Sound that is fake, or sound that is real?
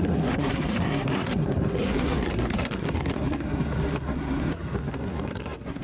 fake